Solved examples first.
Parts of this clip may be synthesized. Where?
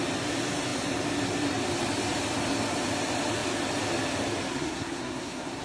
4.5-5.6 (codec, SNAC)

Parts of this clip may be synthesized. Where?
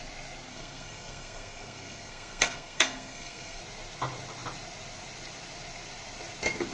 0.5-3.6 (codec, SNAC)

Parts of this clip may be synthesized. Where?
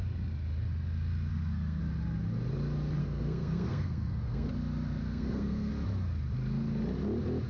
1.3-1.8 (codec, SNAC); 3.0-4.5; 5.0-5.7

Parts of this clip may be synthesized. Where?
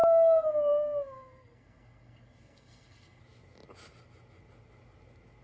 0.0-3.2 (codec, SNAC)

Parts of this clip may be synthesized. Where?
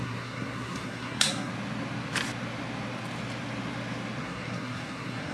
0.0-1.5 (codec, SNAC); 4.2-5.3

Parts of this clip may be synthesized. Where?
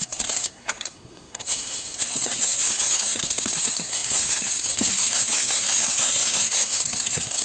0.0-7.4 (codec, SNAC)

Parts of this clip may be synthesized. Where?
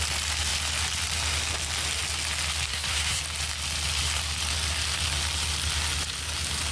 2.7-3.2 (codec, SNAC)